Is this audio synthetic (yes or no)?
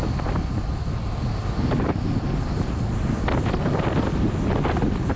no